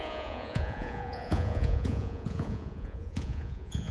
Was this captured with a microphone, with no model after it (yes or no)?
no